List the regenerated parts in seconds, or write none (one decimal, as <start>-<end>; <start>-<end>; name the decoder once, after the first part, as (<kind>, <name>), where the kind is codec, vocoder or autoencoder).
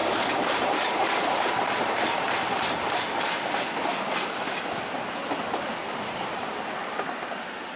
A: 0.0-1.5 (vocoder, BigVGAN v2); 5.8-6.5